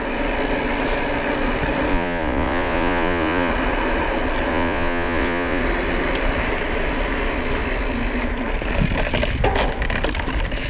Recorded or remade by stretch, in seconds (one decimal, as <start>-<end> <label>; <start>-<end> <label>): 0.0-1.9 recorded; 1.9-3.5 remade; 3.5-4.5 recorded; 4.5-5.6 remade; 5.6-10.7 recorded